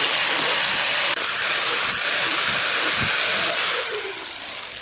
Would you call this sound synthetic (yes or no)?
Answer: no